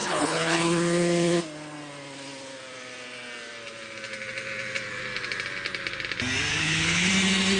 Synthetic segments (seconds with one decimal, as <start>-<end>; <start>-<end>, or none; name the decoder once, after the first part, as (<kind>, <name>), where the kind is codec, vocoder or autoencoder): 0.0-1.4 (codec, HILCodec); 6.5-7.1